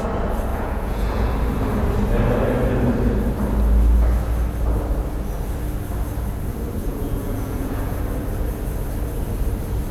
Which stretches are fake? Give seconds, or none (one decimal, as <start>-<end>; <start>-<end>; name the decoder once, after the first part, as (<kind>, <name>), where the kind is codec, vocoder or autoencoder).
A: 0.5-1.3 (vocoder, Vocos); 6.8-8.0

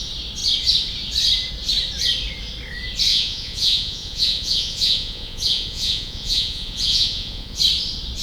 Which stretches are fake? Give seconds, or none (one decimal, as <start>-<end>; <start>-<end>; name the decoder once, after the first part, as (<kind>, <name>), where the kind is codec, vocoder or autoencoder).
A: 3.1-7.6 (vocoder, Vocos)